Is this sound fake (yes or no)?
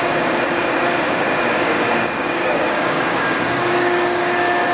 yes